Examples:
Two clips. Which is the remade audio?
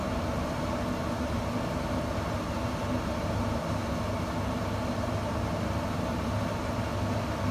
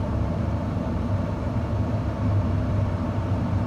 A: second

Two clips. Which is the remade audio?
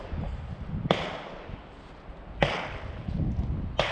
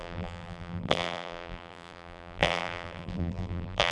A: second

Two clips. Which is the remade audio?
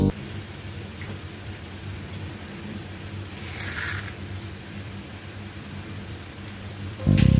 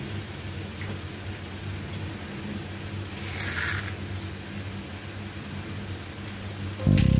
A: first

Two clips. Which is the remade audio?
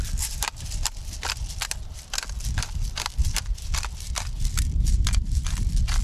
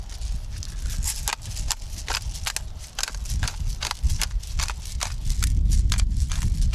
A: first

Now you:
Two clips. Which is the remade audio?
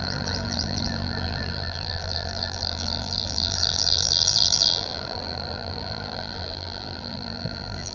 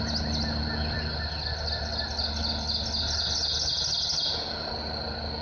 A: first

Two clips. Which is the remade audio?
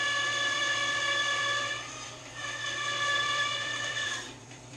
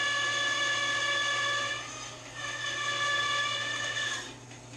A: first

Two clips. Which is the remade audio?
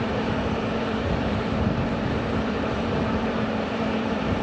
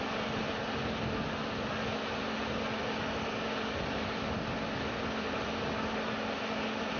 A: first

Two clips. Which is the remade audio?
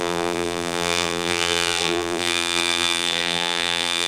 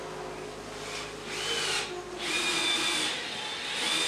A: first